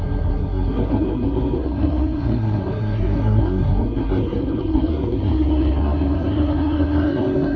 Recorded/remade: remade